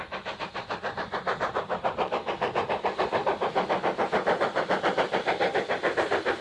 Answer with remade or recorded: remade